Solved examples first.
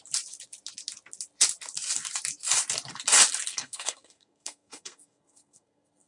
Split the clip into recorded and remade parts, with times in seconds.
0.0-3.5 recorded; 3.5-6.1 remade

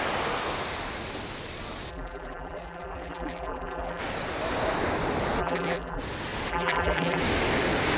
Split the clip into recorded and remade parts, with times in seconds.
0.0-1.9 recorded; 1.9-4.0 remade; 4.0-5.4 recorded; 5.4-6.0 remade; 6.0-6.5 recorded; 6.5-7.2 remade; 7.2-8.0 recorded

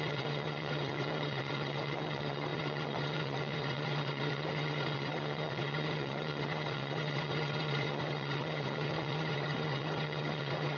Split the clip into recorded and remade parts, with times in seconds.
0.0-10.8 remade